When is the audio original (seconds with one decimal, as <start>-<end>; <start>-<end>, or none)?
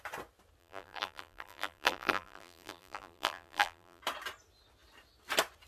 0.0-0.6; 4.0-5.7